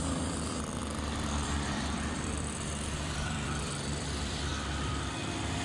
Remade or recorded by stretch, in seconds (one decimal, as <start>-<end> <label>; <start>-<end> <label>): 0.0-4.5 remade; 4.5-5.1 recorded; 5.1-5.6 remade